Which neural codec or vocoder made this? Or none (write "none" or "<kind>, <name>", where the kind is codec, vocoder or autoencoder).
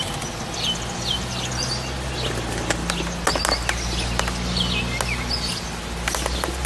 none